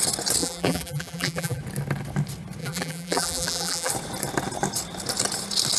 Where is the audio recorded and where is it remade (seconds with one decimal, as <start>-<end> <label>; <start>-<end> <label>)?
0.0-0.4 recorded; 0.4-1.6 remade; 1.6-2.6 recorded; 2.6-3.9 remade; 3.9-5.8 recorded